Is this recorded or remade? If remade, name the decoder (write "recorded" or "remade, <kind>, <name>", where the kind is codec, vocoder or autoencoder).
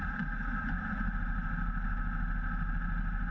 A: recorded